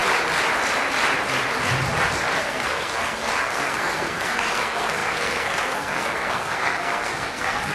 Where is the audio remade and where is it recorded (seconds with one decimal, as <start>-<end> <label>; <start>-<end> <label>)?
0.0-2.4 recorded; 2.4-7.7 remade